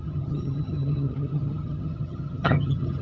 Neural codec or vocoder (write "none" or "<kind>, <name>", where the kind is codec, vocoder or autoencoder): vocoder, HiFi-GAN